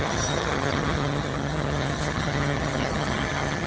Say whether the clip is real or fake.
fake